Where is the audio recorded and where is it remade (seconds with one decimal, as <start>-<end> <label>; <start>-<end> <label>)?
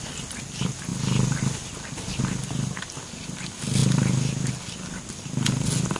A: 0.0-6.0 recorded